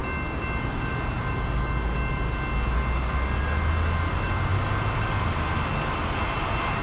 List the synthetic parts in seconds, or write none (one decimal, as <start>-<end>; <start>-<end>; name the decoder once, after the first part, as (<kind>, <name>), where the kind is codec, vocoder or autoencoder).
none